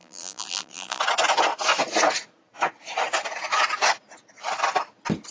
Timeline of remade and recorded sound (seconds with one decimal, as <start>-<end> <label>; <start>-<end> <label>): 0.0-1.0 remade; 1.0-5.3 recorded